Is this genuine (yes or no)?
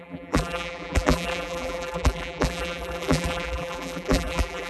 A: no